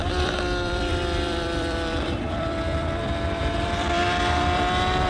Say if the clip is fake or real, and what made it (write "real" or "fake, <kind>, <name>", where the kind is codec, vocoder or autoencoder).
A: fake, vocoder, BigVGAN v2